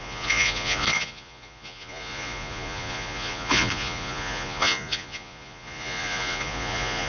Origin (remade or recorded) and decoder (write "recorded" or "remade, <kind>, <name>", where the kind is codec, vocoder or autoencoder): remade, vocoder, Vocos